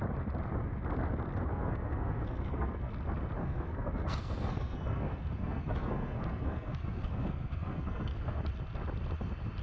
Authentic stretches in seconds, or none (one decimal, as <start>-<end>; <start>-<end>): 0.0-1.5; 2.9-3.4; 8.4-9.6